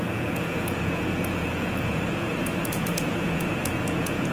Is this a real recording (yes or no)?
no